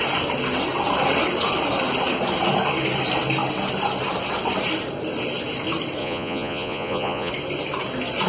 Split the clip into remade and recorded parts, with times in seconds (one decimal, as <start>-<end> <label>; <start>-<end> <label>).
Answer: 0.0-6.0 recorded; 6.0-7.3 remade; 7.3-8.3 recorded